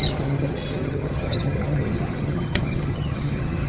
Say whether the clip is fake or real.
fake